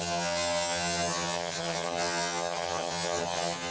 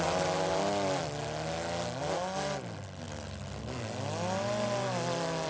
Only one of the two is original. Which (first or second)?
second